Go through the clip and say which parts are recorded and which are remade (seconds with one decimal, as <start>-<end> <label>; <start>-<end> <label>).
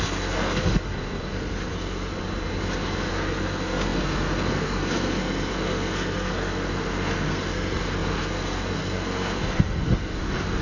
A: 0.0-2.1 remade; 2.1-3.1 recorded; 3.1-10.6 remade